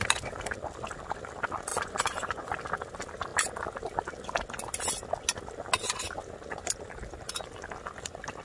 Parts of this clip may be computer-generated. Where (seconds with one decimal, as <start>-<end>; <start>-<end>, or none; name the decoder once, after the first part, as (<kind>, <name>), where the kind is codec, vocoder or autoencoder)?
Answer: 1.7-2.5 (vocoder, Vocos)